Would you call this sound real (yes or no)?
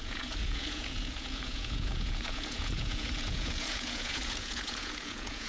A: no